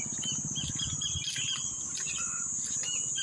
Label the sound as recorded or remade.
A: recorded